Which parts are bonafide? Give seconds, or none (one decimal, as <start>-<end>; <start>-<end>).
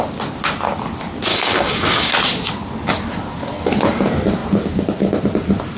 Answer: 0.0-1.3; 2.1-5.8